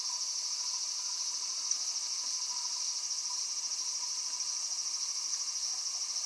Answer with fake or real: real